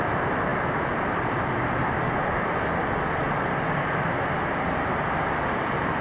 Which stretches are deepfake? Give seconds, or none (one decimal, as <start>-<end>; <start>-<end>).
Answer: none